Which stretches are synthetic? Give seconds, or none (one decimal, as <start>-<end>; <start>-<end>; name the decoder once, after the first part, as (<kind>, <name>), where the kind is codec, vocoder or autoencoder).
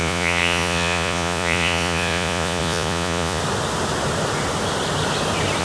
0.0-3.4 (vocoder, Vocos)